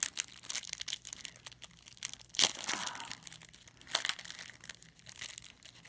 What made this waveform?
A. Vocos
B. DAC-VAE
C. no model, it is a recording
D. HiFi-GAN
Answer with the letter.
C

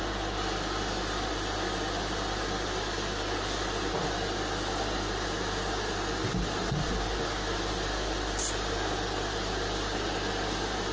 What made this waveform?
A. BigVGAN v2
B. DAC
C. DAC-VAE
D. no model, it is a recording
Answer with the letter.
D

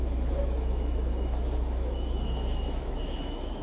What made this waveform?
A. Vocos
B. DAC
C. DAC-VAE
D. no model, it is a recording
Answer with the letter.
C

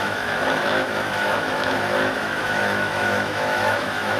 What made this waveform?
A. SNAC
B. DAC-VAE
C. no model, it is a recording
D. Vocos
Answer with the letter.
B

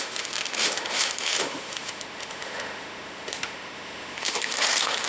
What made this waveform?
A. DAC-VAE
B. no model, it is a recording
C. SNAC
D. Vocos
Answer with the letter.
A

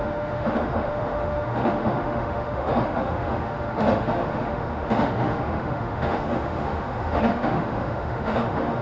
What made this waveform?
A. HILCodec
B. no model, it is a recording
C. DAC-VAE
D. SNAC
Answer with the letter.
C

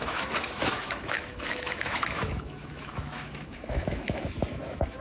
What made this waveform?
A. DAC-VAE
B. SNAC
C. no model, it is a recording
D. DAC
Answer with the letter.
A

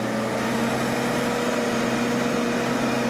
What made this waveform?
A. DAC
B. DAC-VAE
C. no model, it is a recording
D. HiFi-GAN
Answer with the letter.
C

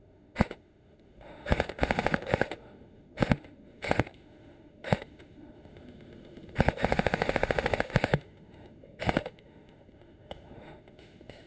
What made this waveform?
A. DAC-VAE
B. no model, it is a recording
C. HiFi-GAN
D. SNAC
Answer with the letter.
A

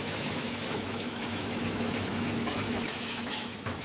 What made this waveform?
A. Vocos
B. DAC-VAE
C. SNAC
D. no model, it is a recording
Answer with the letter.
B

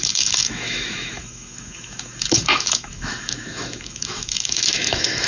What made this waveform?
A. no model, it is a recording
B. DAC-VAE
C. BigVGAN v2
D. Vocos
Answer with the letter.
B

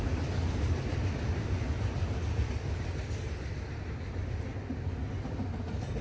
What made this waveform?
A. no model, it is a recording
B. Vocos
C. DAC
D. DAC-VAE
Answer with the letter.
A